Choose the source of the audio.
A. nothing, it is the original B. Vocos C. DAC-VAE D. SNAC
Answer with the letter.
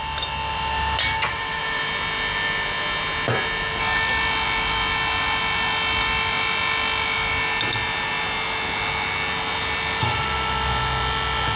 A